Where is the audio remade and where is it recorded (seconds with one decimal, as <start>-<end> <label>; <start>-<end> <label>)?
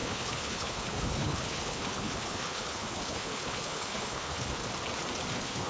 0.0-4.6 remade; 4.6-5.3 recorded; 5.3-5.7 remade